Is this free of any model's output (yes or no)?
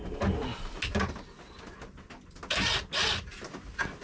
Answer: yes